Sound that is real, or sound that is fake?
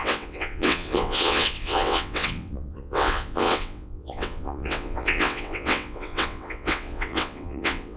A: fake